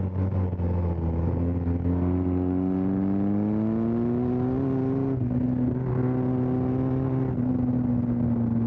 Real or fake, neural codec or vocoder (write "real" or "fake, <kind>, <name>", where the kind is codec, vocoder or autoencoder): real